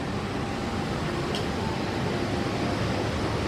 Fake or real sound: real